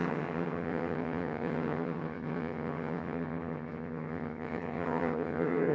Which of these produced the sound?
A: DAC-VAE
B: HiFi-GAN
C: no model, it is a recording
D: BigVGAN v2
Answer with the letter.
B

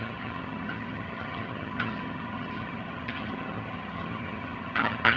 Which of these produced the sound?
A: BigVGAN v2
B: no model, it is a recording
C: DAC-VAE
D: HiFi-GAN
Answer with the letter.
D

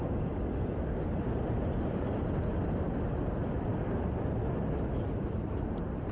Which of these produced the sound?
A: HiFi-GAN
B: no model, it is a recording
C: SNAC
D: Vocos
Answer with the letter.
B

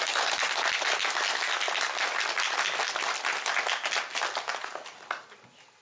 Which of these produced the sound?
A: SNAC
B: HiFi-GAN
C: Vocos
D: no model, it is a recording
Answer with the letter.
D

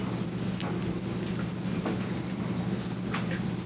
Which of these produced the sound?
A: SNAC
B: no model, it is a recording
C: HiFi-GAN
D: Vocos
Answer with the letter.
B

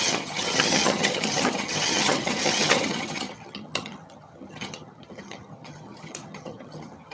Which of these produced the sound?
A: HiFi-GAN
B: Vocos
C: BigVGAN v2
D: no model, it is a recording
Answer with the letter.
A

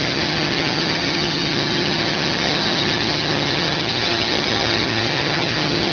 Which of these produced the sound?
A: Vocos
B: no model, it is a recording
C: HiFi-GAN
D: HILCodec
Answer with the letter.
C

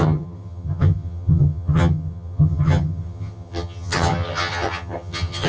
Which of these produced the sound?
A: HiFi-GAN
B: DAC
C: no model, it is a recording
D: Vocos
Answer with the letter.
A